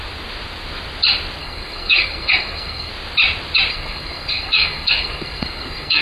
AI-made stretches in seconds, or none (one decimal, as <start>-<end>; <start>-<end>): 1.4-2.9; 3.7-6.0